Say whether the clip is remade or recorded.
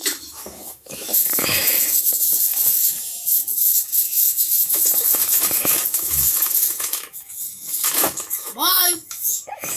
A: remade